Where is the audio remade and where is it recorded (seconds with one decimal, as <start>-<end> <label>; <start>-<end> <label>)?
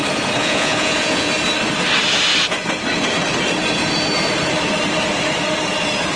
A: 0.0-0.4 recorded; 0.4-1.3 remade; 1.3-6.2 recorded